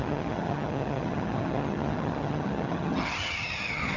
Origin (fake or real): fake